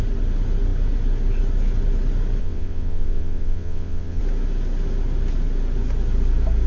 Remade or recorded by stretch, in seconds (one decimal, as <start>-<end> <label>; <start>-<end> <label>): 0.0-2.4 recorded; 2.4-4.2 remade; 4.2-6.7 recorded